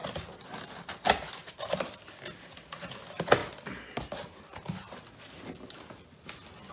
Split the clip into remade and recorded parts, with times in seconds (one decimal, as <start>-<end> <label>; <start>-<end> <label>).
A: 0.0-6.7 recorded